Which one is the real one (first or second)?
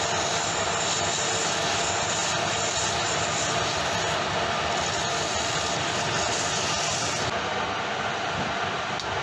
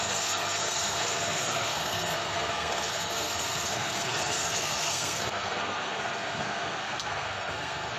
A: first